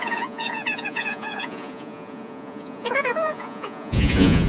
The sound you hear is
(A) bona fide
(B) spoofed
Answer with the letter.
B